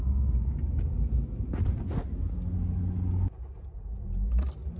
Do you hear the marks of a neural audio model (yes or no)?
no